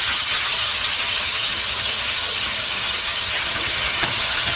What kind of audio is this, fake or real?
fake